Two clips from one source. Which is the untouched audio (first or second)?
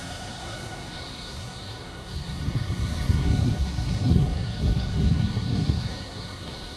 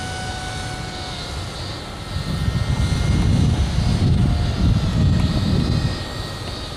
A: second